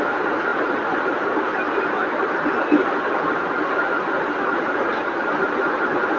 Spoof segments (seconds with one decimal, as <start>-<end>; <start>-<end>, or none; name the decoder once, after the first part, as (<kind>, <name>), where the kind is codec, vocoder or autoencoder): none